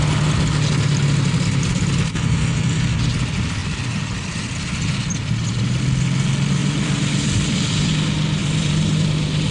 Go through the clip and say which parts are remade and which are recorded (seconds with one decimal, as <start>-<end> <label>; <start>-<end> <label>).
0.0-3.6 recorded; 3.6-5.8 remade; 5.8-6.6 recorded; 6.6-7.9 remade; 7.9-8.4 recorded; 8.4-9.1 remade; 9.1-9.5 recorded